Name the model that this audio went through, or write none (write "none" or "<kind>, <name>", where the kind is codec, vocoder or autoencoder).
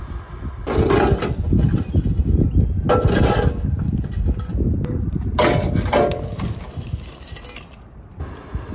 none